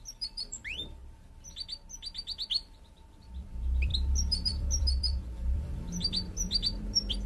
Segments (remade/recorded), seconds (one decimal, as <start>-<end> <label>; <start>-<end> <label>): 0.0-1.0 remade; 1.0-3.4 recorded; 3.4-7.3 remade